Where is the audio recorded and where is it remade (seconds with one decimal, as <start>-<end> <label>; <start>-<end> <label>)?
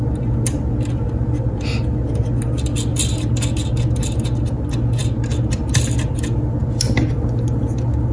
0.0-8.1 recorded